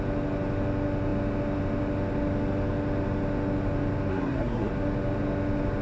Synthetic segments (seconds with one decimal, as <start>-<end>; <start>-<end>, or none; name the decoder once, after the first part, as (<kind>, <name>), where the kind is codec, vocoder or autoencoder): 4.1-4.7 (codec, SNAC)